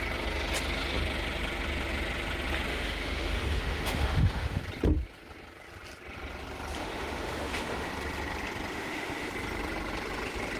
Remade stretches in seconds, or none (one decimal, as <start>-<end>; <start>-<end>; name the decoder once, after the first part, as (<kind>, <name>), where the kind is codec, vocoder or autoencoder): 2.7-4.6 (autoencoder, DAC-VAE); 6.8-7.9; 8.7-9.3